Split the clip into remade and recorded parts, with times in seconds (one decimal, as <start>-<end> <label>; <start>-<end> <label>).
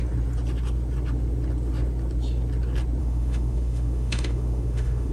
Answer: 0.0-3.0 recorded; 3.0-5.1 remade